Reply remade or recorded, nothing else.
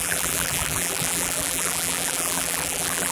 remade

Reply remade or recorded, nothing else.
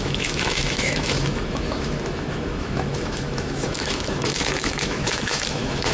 remade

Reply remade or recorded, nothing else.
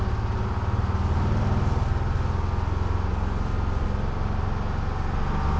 recorded